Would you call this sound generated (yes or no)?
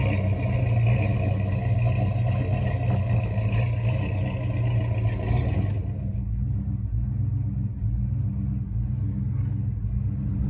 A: no